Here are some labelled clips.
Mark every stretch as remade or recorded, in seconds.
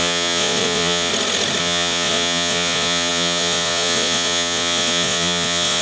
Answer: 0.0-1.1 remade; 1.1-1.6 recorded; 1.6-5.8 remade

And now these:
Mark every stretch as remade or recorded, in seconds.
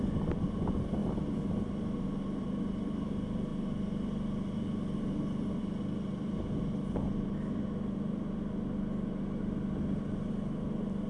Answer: 0.0-11.1 recorded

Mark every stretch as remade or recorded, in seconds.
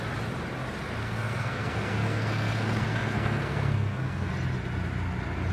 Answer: 0.0-1.0 recorded; 1.0-4.3 remade; 4.3-5.5 recorded